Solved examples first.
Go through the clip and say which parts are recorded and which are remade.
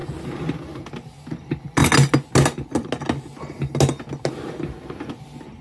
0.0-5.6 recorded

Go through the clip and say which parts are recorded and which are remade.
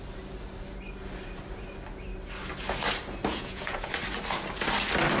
0.0-3.3 recorded; 3.3-3.9 remade; 3.9-5.2 recorded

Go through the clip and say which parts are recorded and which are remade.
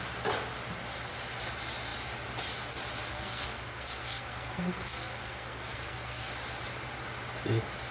0.0-3.1 recorded; 3.1-6.3 remade; 6.3-7.9 recorded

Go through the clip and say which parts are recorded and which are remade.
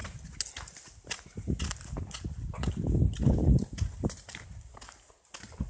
0.0-5.7 recorded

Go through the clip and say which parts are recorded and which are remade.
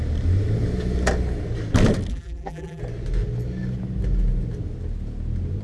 0.0-2.1 recorded; 2.1-2.8 remade; 2.8-5.6 recorded